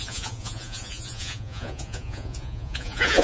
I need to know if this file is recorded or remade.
remade